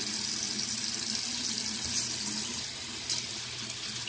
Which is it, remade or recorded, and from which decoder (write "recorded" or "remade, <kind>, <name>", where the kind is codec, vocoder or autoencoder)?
recorded